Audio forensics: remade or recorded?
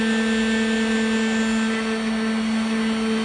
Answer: recorded